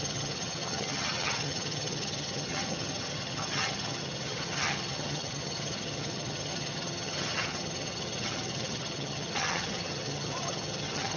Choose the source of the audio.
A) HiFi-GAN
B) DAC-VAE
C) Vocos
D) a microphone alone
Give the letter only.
A